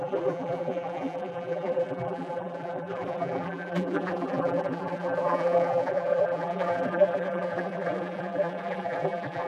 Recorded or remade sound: remade